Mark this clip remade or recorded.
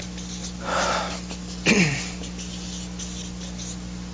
recorded